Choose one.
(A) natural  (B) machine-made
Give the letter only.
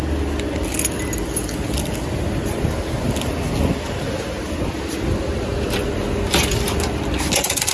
A